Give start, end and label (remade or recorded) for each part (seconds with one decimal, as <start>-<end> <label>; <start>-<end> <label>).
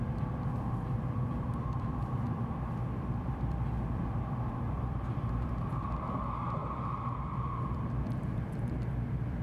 0.0-9.4 remade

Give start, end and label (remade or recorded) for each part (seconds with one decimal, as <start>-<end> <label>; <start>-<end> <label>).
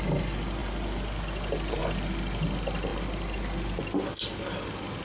0.0-5.0 recorded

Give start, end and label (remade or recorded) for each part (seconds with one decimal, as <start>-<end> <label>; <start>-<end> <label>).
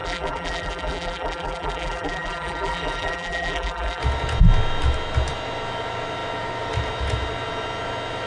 0.0-4.0 remade; 4.0-8.3 recorded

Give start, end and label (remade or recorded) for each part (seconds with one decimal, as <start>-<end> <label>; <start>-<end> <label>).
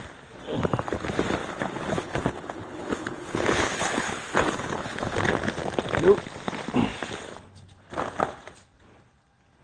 0.0-1.4 recorded; 1.4-5.3 remade; 5.3-9.6 recorded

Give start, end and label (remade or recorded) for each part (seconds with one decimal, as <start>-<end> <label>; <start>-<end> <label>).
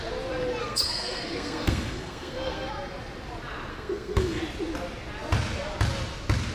0.0-0.6 recorded; 0.6-2.7 remade; 2.7-3.7 recorded; 3.7-4.4 remade; 4.4-6.5 recorded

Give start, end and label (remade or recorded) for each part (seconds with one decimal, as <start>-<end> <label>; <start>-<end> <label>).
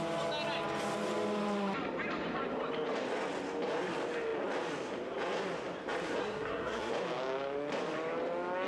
0.0-6.2 recorded; 6.2-6.9 remade; 6.9-8.7 recorded